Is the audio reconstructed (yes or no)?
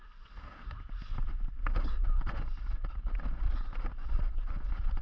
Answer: no